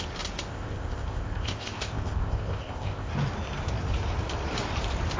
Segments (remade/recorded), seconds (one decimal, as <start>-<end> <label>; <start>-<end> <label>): 0.0-0.5 recorded; 0.5-3.1 remade; 3.1-5.2 recorded